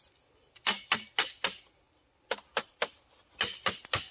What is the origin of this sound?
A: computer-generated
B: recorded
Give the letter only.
B